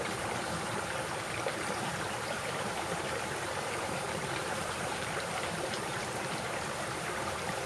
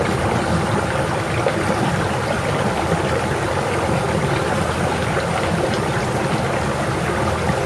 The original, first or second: second